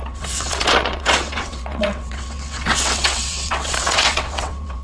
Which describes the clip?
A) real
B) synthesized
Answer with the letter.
B